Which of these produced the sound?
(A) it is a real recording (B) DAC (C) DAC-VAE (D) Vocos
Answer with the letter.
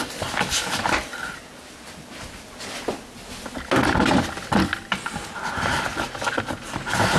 A